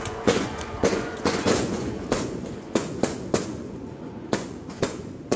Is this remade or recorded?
remade